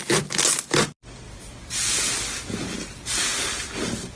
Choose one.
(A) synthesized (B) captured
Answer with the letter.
B